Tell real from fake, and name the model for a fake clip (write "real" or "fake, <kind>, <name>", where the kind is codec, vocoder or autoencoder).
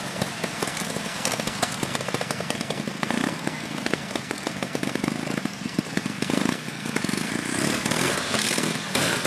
fake, codec, SNAC